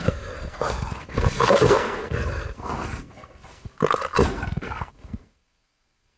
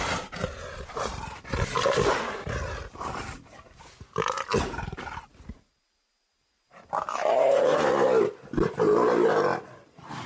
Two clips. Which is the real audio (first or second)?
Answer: second